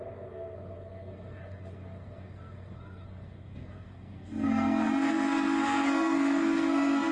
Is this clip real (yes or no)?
no